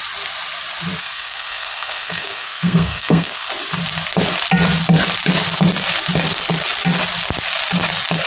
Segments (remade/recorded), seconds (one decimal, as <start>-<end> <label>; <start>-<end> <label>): 0.0-1.0 recorded; 1.0-3.5 remade; 3.5-8.3 recorded